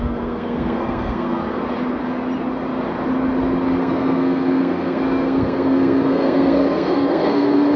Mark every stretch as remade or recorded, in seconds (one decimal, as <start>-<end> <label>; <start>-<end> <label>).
0.0-1.6 remade; 1.6-3.8 recorded; 3.8-7.8 remade